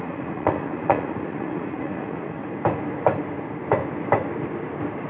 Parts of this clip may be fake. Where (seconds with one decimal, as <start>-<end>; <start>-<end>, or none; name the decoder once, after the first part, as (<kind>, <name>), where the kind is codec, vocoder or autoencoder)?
0.0-2.4 (vocoder, Vocos)